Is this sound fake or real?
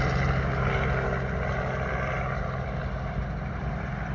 real